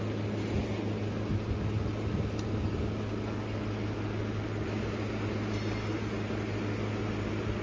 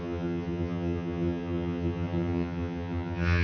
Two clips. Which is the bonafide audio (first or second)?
first